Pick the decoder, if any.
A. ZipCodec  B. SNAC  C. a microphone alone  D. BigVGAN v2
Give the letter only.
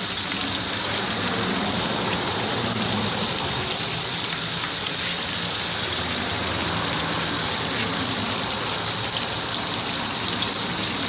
C